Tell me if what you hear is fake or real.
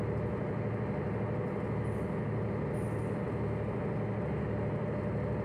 real